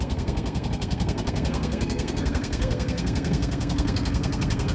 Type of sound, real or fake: fake